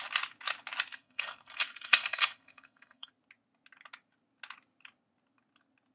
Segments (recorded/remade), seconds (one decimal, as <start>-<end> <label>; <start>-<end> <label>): 0.0-0.9 recorded; 0.9-3.1 remade; 3.1-5.9 recorded